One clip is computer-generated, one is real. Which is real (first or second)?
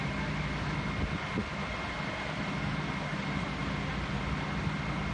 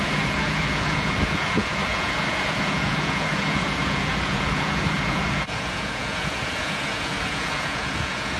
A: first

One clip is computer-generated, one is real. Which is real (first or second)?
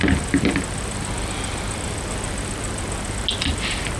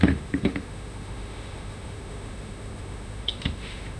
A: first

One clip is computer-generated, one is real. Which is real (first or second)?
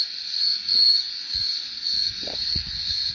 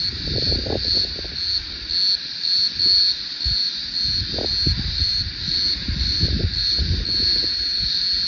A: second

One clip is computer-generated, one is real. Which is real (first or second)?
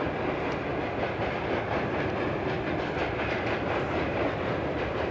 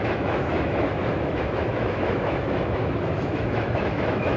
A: first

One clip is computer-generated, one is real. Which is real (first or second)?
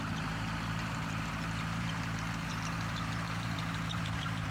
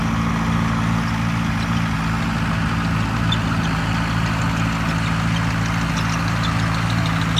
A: second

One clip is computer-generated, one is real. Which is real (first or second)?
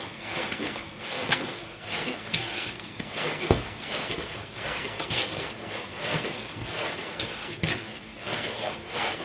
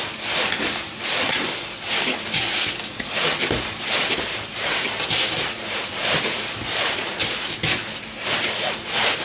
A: second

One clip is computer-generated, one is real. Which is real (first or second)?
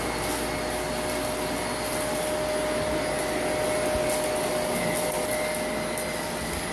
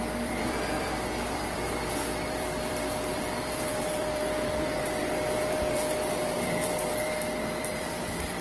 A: first